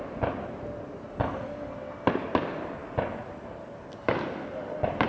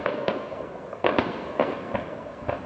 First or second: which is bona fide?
first